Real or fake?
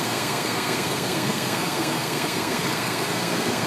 fake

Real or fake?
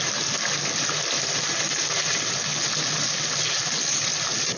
real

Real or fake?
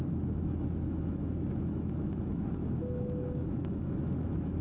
fake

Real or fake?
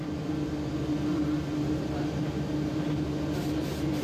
real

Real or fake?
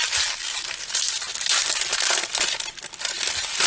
real